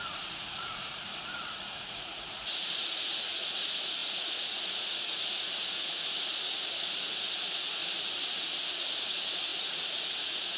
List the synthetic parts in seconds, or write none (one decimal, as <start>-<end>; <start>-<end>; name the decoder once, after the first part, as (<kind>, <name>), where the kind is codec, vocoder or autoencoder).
0.0-7.8 (vocoder, Vocos); 8.3-10.6